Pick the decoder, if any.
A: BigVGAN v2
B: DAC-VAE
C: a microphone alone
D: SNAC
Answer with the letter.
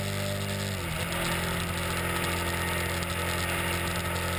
C